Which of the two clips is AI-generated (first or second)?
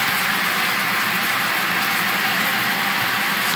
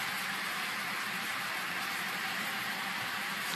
second